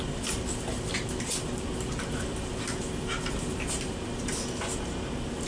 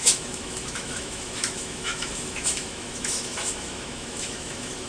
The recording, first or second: first